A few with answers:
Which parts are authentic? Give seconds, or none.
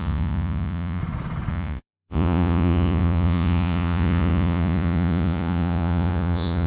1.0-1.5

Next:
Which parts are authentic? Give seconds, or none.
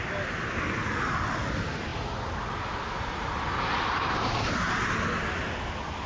0.0-6.1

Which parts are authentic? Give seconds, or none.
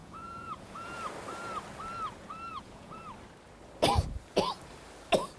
1.0-2.5; 3.0-5.4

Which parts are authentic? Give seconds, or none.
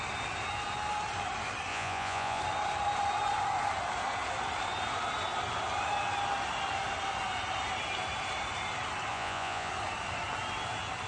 0.0-1.7; 2.4-9.1; 9.7-11.1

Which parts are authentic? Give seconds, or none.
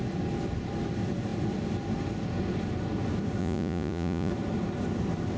0.0-3.4; 4.3-5.4